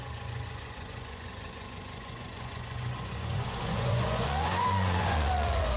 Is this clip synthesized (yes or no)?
yes